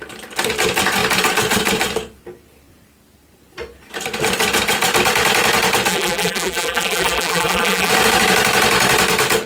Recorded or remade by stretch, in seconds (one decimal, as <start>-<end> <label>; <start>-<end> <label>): 0.0-5.9 recorded; 5.9-7.9 remade; 7.9-9.5 recorded

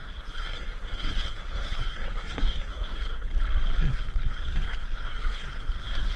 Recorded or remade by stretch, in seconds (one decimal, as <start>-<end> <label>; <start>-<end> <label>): 0.0-3.3 remade; 3.3-3.8 recorded; 3.8-6.2 remade

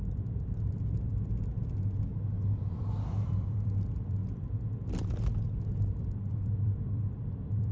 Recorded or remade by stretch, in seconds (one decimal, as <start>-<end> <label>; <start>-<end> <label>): 0.0-1.1 remade; 1.1-2.6 recorded; 2.6-4.2 remade; 4.2-6.0 recorded; 6.0-7.7 remade

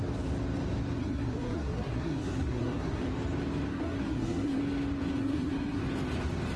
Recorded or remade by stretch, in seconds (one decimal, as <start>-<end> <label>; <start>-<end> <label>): 0.0-1.0 recorded; 1.0-3.0 remade; 3.0-3.7 recorded; 3.7-4.6 remade; 4.6-5.2 recorded; 5.2-5.8 remade; 5.8-6.6 recorded

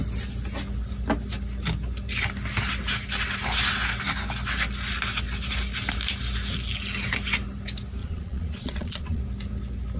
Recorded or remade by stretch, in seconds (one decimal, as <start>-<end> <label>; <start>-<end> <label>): 0.0-8.0 recorded; 8.0-9.2 remade; 9.2-10.0 recorded

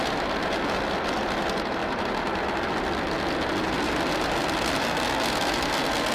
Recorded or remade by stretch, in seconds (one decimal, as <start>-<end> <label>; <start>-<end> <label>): 0.0-6.1 recorded

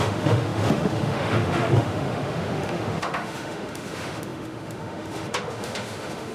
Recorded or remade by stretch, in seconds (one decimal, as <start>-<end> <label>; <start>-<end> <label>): 0.0-6.3 remade

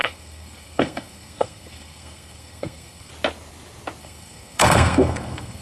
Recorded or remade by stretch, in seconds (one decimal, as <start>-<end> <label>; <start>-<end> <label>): 0.0-3.1 remade; 3.1-4.0 recorded; 4.0-5.6 remade